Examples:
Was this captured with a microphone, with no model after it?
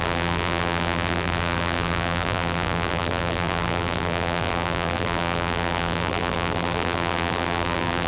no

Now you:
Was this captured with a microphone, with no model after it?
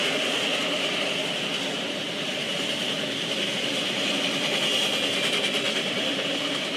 yes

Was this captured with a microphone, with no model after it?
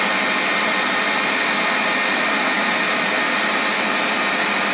no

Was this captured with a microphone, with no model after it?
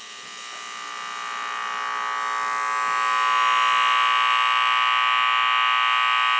yes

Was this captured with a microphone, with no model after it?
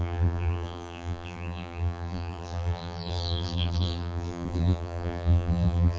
no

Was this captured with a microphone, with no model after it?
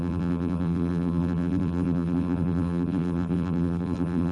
no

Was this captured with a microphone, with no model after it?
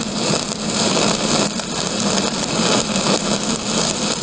no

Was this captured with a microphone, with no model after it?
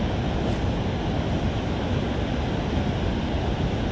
yes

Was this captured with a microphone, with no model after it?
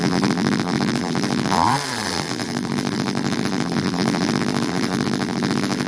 no